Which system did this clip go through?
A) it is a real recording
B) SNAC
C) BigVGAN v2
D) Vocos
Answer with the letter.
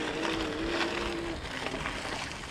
A